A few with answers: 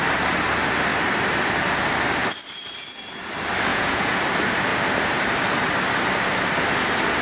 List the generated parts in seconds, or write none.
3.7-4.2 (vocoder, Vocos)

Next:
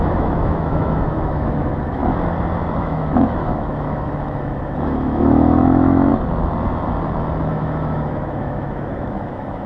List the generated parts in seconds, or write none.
0.0-2.0 (autoencoder, DAC-VAE); 2.8-6.1; 7.5-9.7

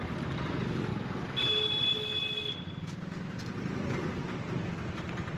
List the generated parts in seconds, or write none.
none

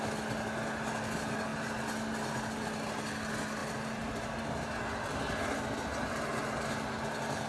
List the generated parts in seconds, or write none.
none